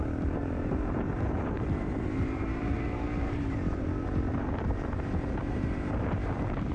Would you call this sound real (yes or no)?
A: no